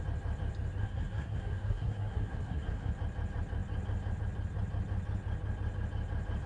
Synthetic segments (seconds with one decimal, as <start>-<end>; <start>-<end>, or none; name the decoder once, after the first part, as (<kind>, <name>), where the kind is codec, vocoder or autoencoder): 0.8-2.9 (codec, SNAC)